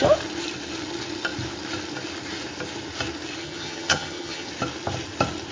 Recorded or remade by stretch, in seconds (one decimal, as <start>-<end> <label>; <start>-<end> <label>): 0.0-3.4 recorded; 3.4-4.5 remade; 4.5-5.5 recorded